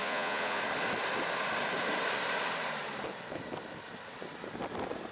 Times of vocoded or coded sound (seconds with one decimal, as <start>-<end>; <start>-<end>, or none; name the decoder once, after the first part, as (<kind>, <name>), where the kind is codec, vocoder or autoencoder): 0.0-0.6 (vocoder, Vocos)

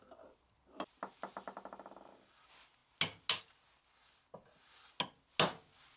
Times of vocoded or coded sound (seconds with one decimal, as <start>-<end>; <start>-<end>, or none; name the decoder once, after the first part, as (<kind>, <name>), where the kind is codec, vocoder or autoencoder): none

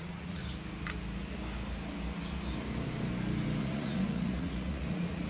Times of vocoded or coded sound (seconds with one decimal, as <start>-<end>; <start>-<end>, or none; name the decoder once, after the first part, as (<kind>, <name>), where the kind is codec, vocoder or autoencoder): 0.0-0.4 (vocoder, Vocos); 3.6-5.3

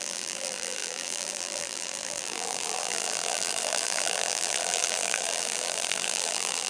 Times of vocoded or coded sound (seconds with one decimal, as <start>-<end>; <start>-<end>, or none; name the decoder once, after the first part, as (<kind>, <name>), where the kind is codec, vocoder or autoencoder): 0.0-6.7 (vocoder, BigVGAN v2)

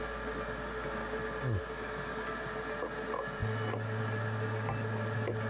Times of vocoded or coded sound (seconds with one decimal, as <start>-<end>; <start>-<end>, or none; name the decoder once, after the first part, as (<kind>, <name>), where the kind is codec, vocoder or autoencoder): none